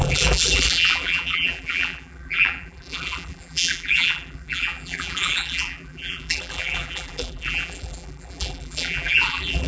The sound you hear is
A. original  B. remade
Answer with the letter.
B